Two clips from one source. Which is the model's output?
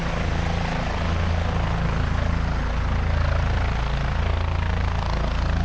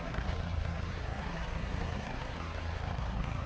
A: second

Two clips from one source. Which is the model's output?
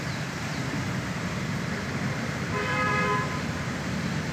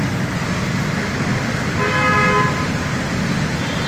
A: first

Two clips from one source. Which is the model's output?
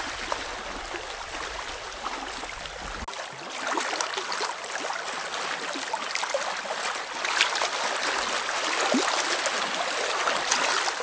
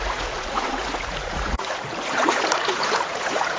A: second